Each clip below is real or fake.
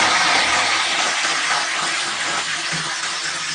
real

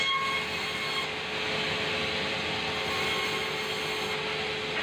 real